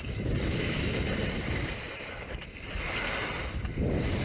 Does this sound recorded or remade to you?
remade